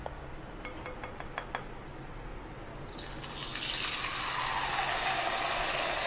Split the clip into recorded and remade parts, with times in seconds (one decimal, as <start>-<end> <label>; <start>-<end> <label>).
0.0-6.1 recorded